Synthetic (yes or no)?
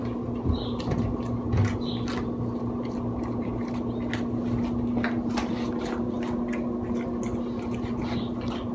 no